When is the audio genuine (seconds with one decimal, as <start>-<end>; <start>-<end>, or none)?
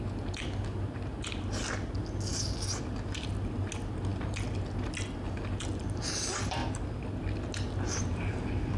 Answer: 0.0-8.8